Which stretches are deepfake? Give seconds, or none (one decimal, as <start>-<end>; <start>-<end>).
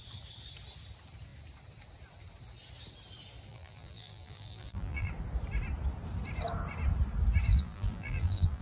3.5-5.1; 7.5-8.6